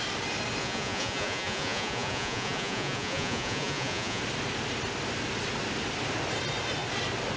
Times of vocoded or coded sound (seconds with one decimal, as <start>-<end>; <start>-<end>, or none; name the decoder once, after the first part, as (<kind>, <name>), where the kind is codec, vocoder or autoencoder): 0.6-4.2 (vocoder, Vocos)